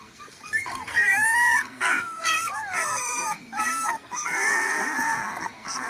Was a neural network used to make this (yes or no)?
yes